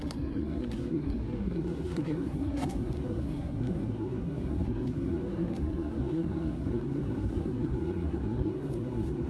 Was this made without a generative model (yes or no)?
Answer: no